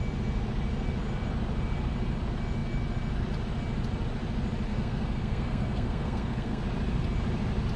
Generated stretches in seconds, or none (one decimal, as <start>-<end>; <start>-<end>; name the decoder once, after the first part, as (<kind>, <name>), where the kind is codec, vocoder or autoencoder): 4.7-6.6 (codec, SNAC)